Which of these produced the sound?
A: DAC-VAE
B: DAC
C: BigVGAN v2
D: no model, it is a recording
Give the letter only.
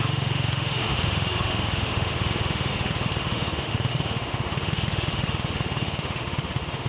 A